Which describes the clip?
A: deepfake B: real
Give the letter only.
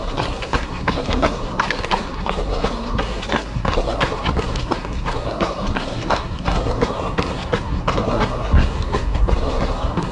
A